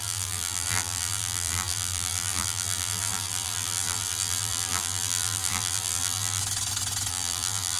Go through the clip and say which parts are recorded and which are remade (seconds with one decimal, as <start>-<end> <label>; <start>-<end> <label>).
0.0-6.4 remade; 6.4-7.1 recorded; 7.1-7.8 remade